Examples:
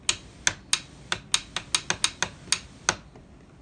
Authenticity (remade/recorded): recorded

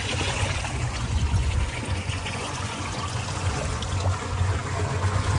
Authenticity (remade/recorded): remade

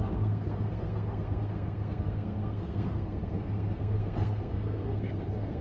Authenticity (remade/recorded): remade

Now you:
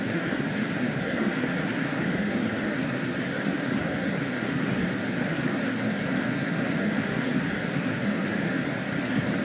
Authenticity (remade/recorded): remade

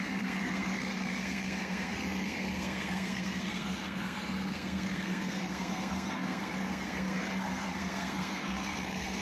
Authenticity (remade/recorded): remade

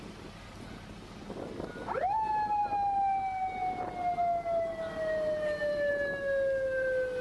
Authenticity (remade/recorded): recorded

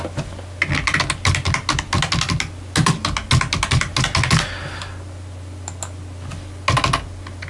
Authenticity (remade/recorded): recorded